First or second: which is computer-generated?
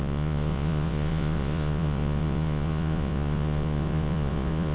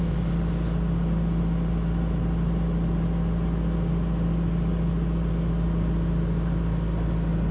first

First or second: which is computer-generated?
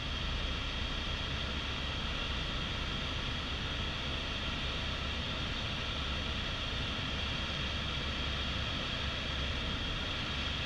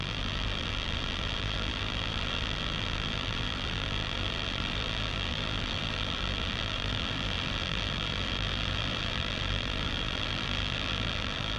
second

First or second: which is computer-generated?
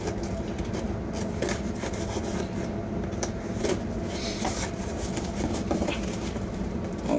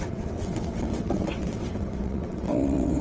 second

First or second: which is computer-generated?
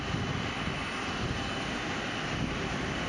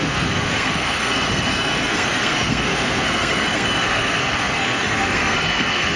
second